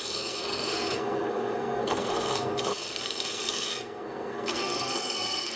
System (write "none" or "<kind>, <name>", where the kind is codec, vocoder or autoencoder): codec, SNAC